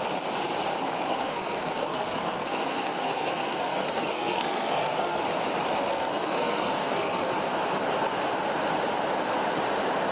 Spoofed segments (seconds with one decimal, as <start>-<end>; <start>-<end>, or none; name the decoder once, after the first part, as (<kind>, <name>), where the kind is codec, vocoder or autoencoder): 0.9-5.2 (codec, SNAC); 5.9-7.3